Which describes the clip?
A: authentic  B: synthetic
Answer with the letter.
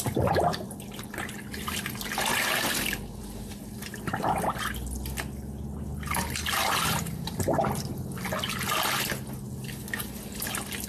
A